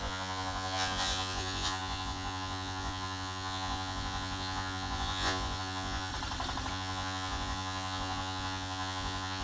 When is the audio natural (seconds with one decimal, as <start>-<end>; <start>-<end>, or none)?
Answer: 6.1-6.7